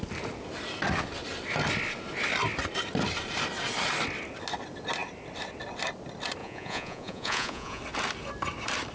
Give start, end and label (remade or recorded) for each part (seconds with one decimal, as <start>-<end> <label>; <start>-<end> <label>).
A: 0.0-6.4 recorded; 6.4-7.8 remade; 7.8-8.9 recorded